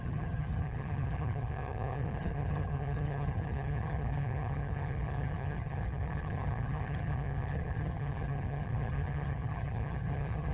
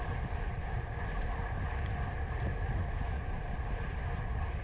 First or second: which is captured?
second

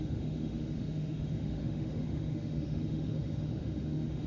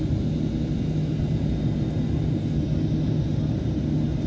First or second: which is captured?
second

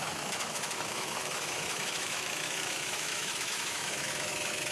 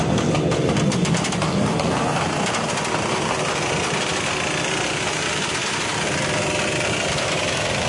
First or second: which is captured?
second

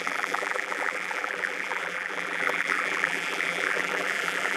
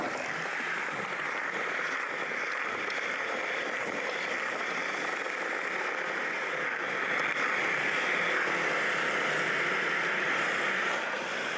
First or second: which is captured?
second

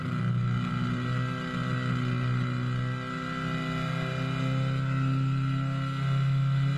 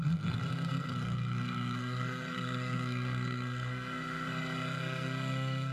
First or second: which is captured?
first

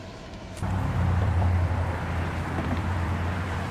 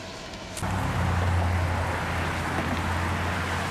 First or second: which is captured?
second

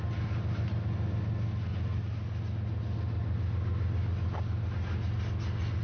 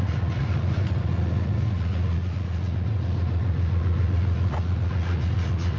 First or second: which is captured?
first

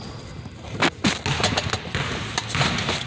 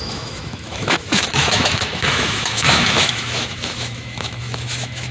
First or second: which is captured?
first